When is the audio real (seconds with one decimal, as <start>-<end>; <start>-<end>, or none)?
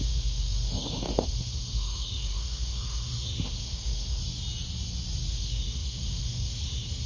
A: 4.2-5.3